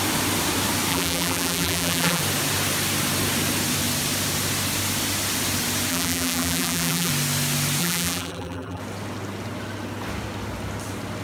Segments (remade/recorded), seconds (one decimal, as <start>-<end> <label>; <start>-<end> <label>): 0.0-0.9 recorded; 0.9-2.2 remade; 2.2-5.9 recorded; 5.9-7.1 remade; 7.1-7.8 recorded; 7.8-8.8 remade; 8.8-11.2 recorded